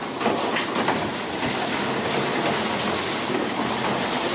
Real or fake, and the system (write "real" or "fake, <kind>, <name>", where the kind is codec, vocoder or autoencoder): real